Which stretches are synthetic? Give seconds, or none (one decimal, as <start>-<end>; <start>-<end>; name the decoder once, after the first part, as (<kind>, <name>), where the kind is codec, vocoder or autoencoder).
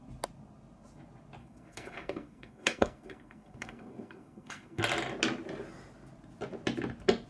1.4-4.8 (codec, SNAC)